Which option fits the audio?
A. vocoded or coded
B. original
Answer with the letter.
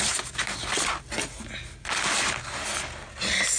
B